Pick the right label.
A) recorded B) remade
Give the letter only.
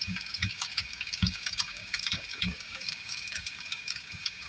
B